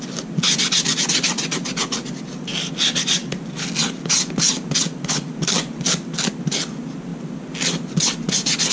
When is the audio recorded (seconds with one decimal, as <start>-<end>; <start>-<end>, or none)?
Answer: 0.0-8.7